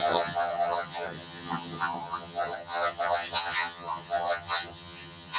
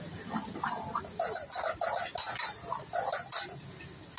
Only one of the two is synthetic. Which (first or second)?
first